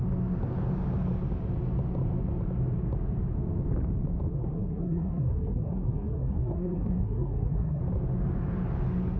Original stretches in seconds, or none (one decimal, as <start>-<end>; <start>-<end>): 0.0-4.3; 7.8-9.2